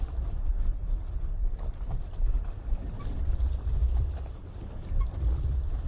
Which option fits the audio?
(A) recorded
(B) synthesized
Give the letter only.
A